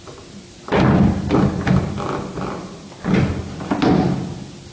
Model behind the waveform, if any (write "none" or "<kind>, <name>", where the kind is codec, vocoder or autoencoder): none